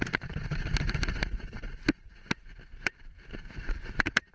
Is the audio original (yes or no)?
yes